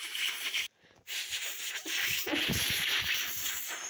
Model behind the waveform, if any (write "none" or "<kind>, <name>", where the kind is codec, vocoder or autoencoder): vocoder, BigVGAN v2